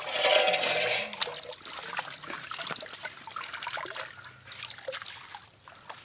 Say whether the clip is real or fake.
real